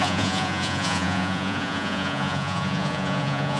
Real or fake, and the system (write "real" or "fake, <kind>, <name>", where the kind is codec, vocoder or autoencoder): fake, vocoder, Vocos